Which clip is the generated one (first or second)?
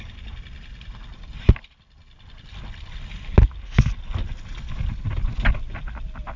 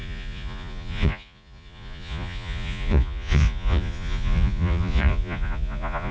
second